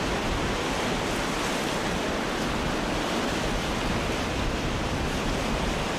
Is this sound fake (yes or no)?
no